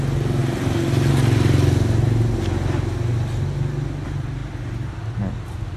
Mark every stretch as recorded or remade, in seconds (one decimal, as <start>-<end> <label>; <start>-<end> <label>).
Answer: 0.0-5.8 recorded